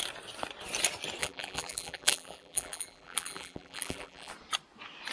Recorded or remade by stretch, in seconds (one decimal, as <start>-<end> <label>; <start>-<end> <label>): 0.0-1.2 recorded; 1.2-4.3 remade; 4.3-5.1 recorded